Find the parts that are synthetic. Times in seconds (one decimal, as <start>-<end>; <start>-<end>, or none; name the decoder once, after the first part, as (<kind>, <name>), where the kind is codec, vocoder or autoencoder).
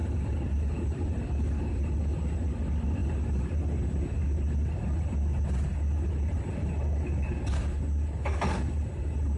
none